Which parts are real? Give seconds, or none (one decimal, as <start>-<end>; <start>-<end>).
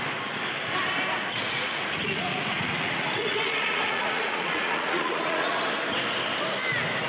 0.0-1.3; 5.6-7.1